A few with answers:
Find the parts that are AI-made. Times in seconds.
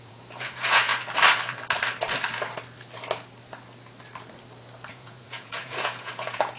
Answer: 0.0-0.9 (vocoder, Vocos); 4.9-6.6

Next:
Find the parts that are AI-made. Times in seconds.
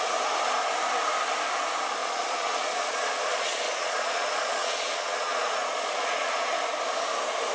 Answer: 2.0-6.5 (vocoder, Vocos)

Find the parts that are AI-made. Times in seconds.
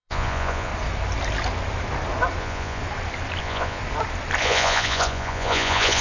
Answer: 0.0-0.7 (vocoder, Vocos); 2.4-2.8; 3.4-3.8; 4.4-6.0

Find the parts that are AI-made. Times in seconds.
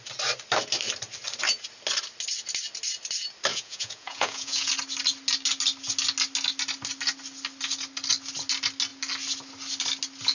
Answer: 3.5-4.7 (vocoder, Vocos)